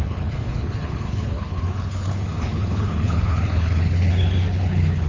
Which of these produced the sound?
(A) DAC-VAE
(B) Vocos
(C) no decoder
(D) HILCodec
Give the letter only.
D